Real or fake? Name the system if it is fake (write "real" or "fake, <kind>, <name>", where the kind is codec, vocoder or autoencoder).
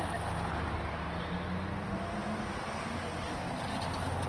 real